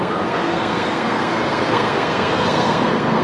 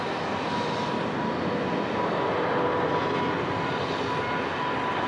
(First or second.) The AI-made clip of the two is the first